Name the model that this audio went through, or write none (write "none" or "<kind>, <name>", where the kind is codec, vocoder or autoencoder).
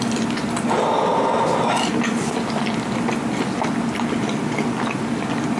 none